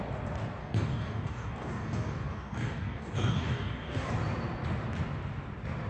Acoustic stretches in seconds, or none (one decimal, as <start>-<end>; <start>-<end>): 0.0-0.6; 4.1-5.9